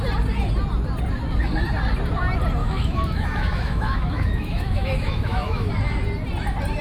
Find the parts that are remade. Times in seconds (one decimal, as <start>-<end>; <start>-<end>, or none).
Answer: 2.6-5.7